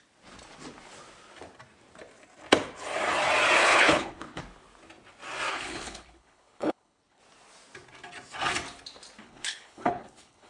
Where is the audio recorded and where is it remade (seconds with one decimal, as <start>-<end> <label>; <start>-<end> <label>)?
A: 0.0-3.6 recorded; 3.6-4.4 remade; 4.4-5.5 recorded; 5.5-7.2 remade; 7.2-9.2 recorded; 9.2-10.5 remade